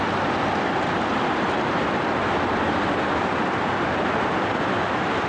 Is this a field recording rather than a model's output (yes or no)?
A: yes